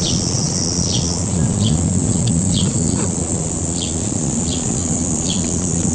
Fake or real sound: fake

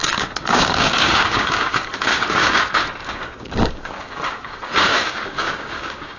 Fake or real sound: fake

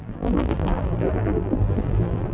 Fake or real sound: fake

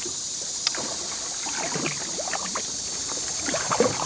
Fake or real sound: real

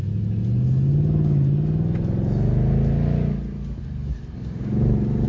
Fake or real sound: real